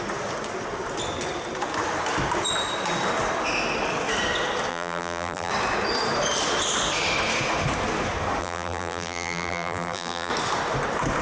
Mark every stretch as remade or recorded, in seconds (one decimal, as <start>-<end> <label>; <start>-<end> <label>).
0.0-4.7 recorded; 4.7-5.5 remade; 5.5-8.4 recorded; 8.4-10.3 remade; 10.3-11.2 recorded